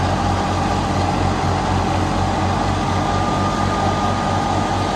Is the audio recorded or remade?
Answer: recorded